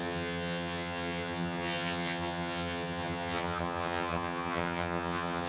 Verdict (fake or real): fake